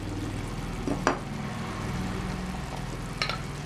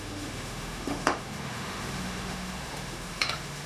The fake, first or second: second